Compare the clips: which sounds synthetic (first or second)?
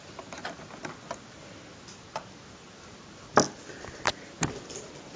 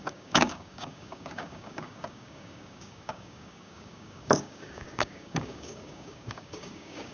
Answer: second